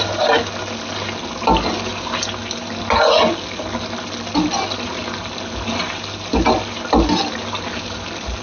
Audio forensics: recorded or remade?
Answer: recorded